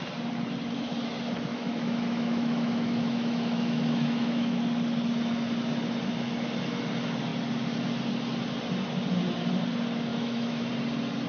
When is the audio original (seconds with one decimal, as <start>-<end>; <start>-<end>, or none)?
0.0-1.5; 4.6-10.1; 10.7-11.3